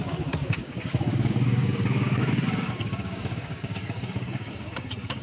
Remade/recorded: remade